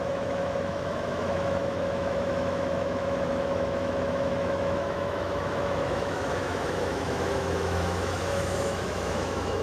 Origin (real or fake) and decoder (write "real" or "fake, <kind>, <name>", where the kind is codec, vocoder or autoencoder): fake, autoencoder, DAC-VAE